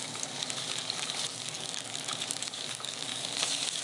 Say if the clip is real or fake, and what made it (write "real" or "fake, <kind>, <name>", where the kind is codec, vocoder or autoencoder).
fake, codec, DAC